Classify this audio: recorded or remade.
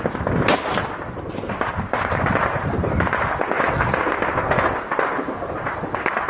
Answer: recorded